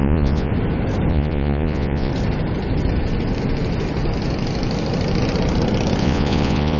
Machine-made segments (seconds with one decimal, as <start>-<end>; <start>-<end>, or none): 0.0-0.5; 1.1-2.1; 6.0-6.8